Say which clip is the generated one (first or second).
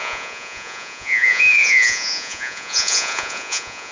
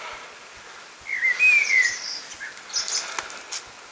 first